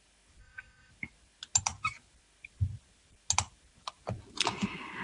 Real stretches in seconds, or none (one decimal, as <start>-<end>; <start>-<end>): 0.0-0.4; 0.9-5.0